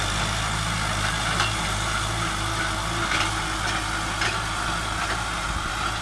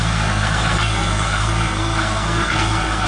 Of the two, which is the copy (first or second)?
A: second